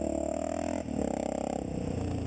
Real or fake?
real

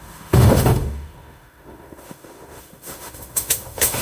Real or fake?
fake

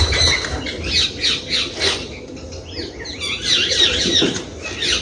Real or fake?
real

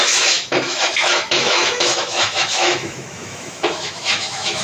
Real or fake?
fake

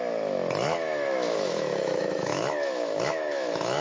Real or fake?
fake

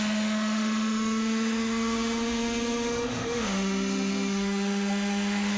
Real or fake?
fake